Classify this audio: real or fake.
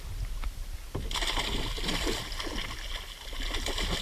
real